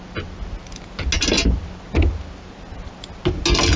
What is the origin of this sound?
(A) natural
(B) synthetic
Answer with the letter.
A